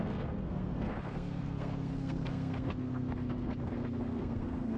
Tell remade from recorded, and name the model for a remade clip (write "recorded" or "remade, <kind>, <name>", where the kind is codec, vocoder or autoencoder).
remade, codec, SNAC